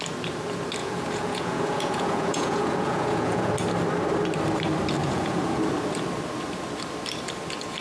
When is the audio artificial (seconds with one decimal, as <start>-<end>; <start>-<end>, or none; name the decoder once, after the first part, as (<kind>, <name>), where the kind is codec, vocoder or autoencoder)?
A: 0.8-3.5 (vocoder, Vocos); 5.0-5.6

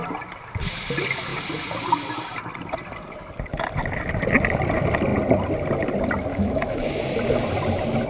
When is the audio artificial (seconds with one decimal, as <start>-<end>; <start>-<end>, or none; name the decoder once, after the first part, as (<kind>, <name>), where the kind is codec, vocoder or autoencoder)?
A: 6.3-7.0 (autoencoder, DAC-VAE)

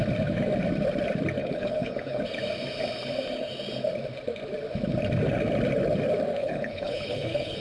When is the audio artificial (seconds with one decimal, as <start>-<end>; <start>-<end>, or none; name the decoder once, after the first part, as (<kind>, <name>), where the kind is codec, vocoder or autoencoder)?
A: 1.4-2.2 (codec, HILCodec); 6.4-7.6

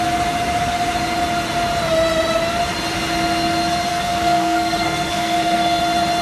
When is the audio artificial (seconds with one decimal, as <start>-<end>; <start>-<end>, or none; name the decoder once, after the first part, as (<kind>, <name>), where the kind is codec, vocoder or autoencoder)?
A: 3.9-5.8 (codec, SNAC)

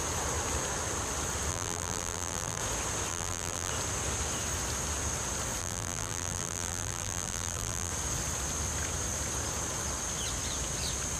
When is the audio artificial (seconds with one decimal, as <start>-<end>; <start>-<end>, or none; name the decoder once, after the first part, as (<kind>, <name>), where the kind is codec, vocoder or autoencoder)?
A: 1.5-2.6 (vocoder, BigVGAN v2); 3.1-3.7; 5.6-7.9

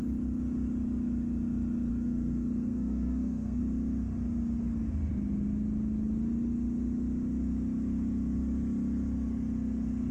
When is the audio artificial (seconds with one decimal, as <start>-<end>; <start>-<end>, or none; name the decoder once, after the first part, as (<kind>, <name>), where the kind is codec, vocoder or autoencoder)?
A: 1.9-3.6 (codec, SNAC)